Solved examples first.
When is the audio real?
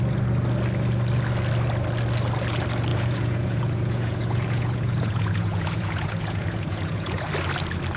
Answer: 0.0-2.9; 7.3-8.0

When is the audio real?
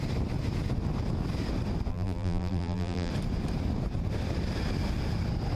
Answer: 0.0-1.9; 3.1-5.6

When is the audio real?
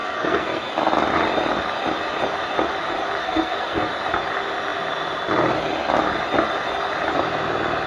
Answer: 0.7-3.2; 3.9-7.9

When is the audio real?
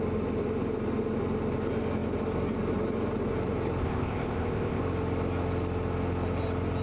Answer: 0.0-3.8; 4.8-6.8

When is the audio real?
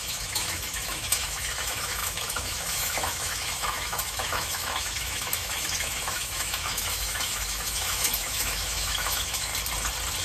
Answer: 9.5-10.2